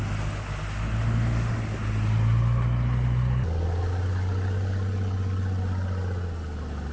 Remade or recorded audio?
recorded